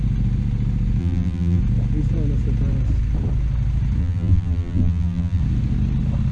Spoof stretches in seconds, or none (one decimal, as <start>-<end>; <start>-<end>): 1.0-1.6; 4.0-5.4